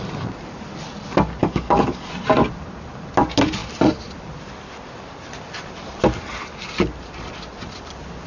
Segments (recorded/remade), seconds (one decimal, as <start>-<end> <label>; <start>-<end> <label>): 0.0-1.4 recorded; 1.4-2.1 remade; 2.1-8.3 recorded